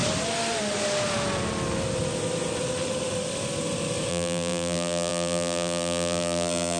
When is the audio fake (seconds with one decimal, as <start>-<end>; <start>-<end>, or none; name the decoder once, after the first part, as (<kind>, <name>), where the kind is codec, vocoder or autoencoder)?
4.1-6.8 (vocoder, BigVGAN v2)